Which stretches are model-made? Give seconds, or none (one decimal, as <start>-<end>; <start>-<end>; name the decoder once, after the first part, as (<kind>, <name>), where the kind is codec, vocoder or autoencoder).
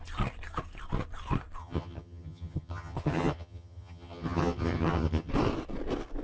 1.6-5.3 (vocoder, HiFi-GAN)